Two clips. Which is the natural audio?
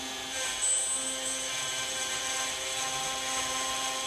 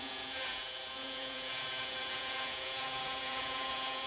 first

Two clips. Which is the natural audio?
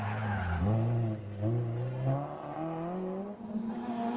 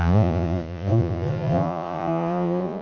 first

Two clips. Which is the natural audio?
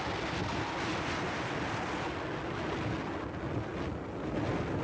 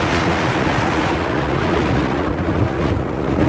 first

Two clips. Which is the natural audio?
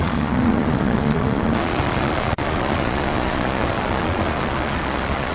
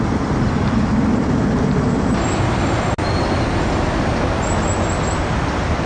second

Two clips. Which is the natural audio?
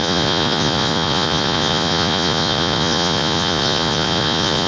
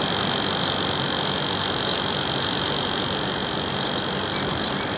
second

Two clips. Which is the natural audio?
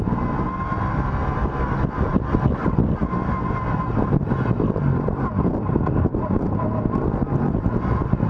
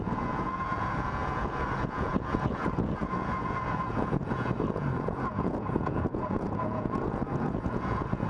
first